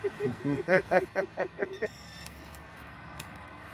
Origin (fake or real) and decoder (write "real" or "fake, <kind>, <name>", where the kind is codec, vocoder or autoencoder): fake, codec, SNAC